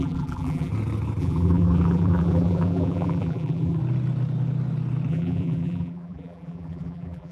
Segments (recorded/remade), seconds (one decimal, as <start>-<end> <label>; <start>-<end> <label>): 0.0-0.7 remade; 0.7-1.2 recorded; 1.2-3.8 remade; 3.8-5.1 recorded; 5.1-7.3 remade